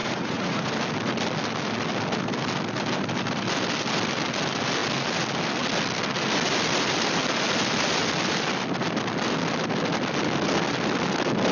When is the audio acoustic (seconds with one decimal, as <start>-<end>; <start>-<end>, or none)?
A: 0.7-11.5